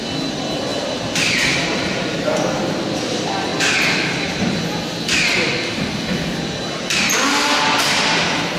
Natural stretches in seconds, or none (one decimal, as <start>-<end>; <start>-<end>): 0.0-8.6